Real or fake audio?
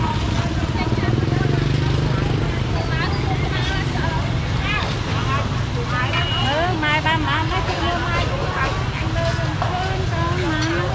real